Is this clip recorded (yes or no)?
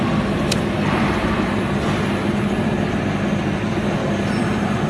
yes